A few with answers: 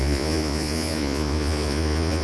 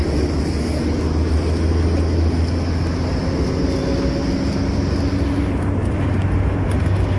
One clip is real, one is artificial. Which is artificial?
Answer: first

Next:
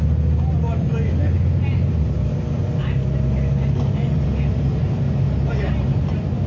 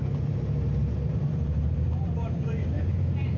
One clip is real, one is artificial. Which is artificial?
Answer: second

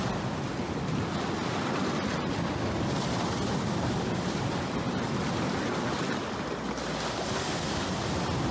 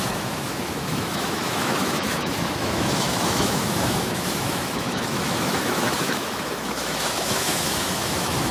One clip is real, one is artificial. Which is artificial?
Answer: second